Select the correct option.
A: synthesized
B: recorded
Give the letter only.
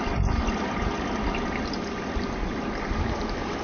B